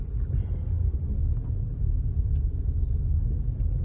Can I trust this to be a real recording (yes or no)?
yes